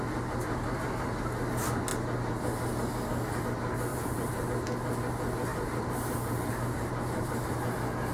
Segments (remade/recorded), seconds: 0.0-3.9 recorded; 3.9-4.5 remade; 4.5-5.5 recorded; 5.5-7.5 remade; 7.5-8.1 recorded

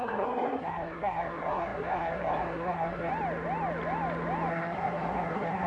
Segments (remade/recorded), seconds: 0.0-3.1 remade; 3.1-4.5 recorded; 4.5-5.7 remade

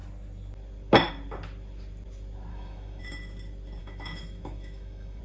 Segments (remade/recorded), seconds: 0.0-2.5 recorded; 2.5-3.0 remade; 3.0-3.8 recorded; 3.8-5.2 remade

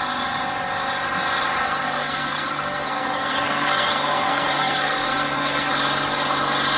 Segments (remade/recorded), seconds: 0.0-1.6 recorded; 1.6-5.7 remade; 5.7-6.8 recorded

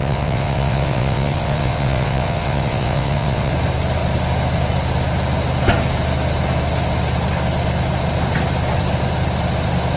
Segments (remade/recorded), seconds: 0.0-3.5 remade; 3.5-10.0 recorded

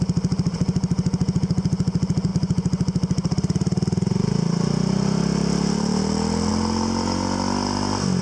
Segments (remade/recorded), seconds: 0.0-8.2 recorded

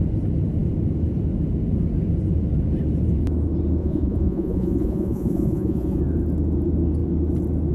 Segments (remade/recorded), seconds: 0.0-3.8 recorded; 3.8-6.0 remade; 6.0-7.7 recorded

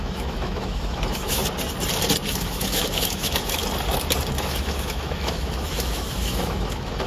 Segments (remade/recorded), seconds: 0.0-1.4 remade; 1.4-2.3 recorded; 2.3-3.6 remade; 3.6-4.4 recorded; 4.4-7.1 remade